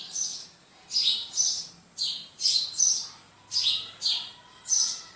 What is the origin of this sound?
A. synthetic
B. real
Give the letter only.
B